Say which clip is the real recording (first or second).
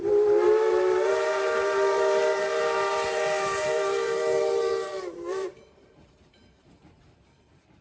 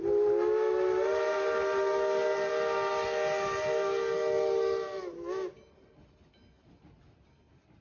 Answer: second